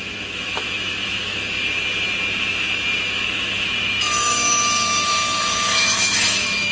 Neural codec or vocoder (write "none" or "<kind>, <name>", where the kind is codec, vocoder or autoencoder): autoencoder, DAC-VAE